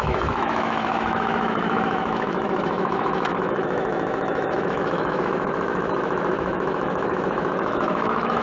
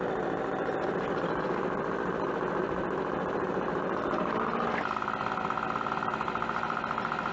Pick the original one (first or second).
second